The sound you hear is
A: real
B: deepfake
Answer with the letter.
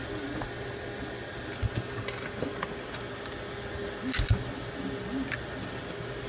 A